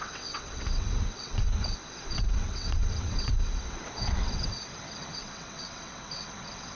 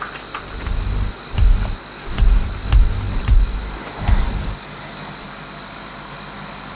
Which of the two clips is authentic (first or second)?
second